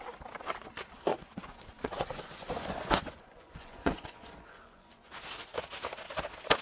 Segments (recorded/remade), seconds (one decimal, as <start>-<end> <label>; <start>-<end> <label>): 0.0-1.1 recorded; 1.1-5.1 remade; 5.1-6.6 recorded